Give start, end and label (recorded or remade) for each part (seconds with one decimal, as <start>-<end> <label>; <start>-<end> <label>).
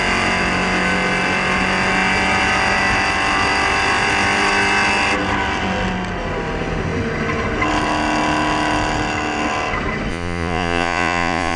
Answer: 0.0-10.1 recorded; 10.1-11.6 remade